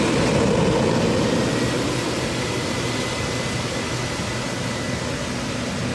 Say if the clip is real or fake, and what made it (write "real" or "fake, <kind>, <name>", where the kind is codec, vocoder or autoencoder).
real